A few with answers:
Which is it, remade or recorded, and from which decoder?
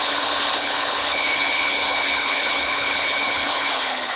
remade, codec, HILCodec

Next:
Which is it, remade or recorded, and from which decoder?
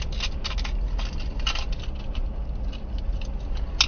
recorded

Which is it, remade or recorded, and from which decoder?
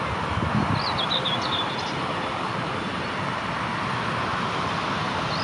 recorded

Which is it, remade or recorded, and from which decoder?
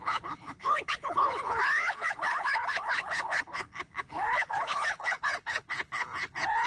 remade, codec, HILCodec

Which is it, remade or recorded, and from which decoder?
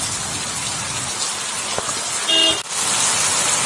recorded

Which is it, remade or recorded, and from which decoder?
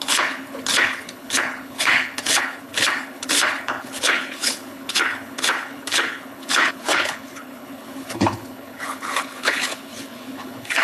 remade, codec, HILCodec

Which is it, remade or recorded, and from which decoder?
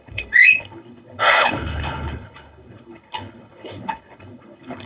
remade, codec, HILCodec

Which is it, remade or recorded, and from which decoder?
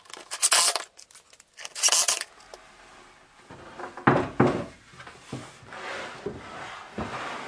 recorded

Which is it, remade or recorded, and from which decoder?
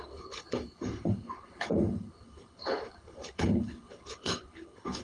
remade, codec, HILCodec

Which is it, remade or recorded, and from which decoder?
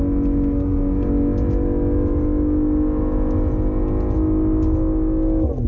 recorded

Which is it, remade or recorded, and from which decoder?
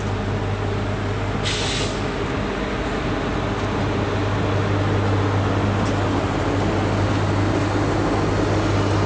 recorded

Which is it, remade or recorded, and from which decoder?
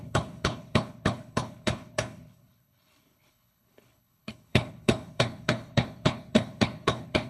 remade, codec, HILCodec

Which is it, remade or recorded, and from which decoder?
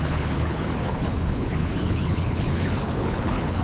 remade, codec, HILCodec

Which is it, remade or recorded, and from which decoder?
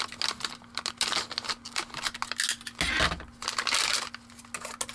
recorded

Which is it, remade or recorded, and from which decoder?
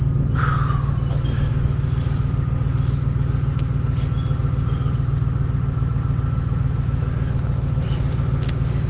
recorded